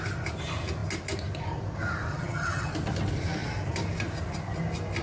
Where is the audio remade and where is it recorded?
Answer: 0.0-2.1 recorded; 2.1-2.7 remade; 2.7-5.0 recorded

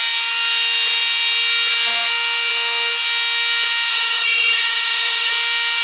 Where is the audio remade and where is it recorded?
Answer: 0.0-3.9 recorded; 3.9-5.3 remade; 5.3-5.8 recorded

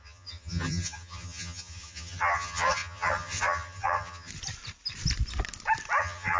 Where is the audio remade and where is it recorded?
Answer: 0.0-4.3 remade; 4.3-6.0 recorded; 6.0-6.4 remade

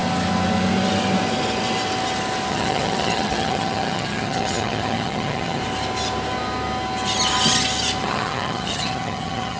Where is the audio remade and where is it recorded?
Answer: 0.0-2.5 recorded; 2.5-5.6 remade; 5.6-8.0 recorded; 8.0-9.6 remade

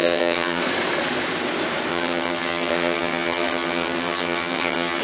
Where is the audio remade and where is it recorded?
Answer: 0.0-0.6 remade; 0.6-1.9 recorded; 1.9-5.0 remade

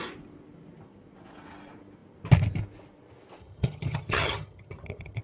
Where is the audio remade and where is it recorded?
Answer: 0.0-3.4 recorded; 3.4-5.2 remade

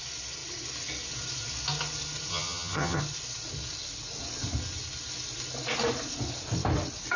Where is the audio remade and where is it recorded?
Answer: 0.0-2.3 recorded; 2.3-3.0 remade; 3.0-7.2 recorded